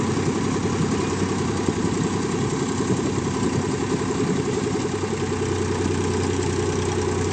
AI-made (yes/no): no